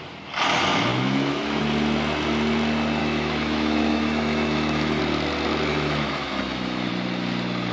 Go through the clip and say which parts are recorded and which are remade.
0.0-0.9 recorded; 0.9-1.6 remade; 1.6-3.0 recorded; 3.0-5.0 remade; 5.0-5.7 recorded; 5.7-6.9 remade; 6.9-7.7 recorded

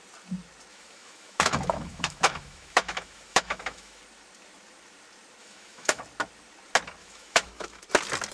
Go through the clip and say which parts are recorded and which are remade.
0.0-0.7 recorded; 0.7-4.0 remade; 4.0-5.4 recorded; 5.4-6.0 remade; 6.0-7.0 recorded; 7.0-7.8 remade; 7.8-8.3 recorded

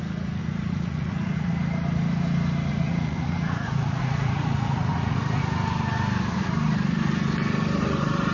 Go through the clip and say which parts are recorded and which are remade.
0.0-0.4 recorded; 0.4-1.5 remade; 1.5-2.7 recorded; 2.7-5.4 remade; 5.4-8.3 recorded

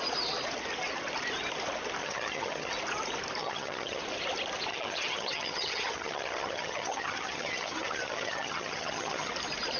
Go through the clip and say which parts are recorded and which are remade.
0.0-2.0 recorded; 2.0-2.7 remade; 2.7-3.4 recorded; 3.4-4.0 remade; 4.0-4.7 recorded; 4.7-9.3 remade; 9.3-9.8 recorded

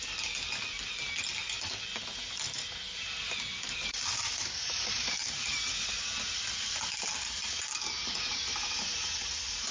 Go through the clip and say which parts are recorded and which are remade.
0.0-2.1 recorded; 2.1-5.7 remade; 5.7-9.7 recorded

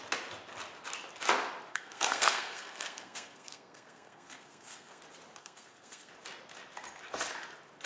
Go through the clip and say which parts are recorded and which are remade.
0.0-1.7 recorded; 1.7-5.0 remade; 5.0-5.4 recorded; 5.4-6.1 remade; 6.1-7.9 recorded

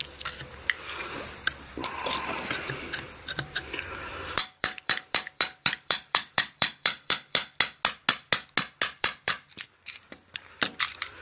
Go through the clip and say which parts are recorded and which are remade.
0.0-7.4 remade; 7.4-9.0 recorded; 9.0-11.2 remade

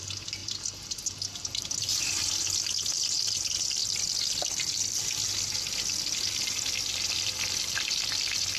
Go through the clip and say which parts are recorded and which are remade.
0.0-0.4 recorded; 0.4-1.6 remade; 1.6-8.6 recorded